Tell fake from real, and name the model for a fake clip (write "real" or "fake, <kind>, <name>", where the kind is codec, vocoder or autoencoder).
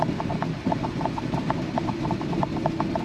fake, vocoder, BigVGAN v2